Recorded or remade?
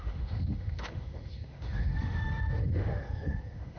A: remade